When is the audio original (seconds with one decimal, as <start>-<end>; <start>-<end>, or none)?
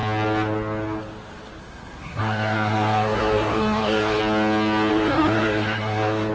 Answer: 0.0-1.6; 4.2-4.9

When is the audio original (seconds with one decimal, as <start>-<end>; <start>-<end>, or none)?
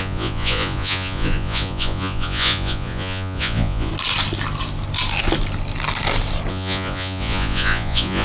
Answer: 3.9-6.5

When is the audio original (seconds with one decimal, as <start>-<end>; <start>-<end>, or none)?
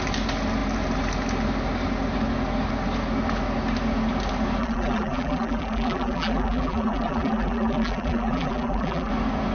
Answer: 0.0-4.6; 9.1-9.5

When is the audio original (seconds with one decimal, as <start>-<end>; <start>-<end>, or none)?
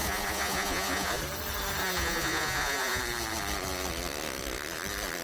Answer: 1.2-1.8; 3.0-5.2